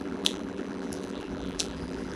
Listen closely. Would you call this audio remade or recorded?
remade